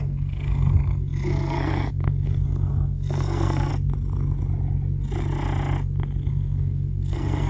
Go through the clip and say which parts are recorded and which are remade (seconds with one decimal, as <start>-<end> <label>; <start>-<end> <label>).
0.0-3.7 remade; 3.7-6.3 recorded; 6.3-7.5 remade